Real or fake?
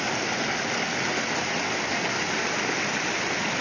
real